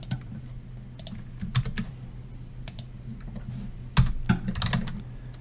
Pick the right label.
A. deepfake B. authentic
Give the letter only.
B